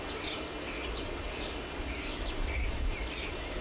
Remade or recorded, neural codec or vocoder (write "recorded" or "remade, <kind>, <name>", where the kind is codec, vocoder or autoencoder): recorded